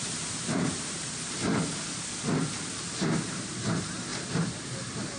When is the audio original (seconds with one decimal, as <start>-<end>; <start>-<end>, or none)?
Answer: 1.4-3.1